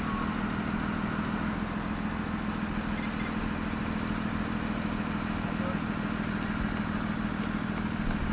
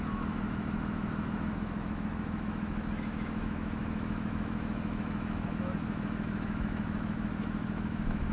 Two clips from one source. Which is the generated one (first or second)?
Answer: second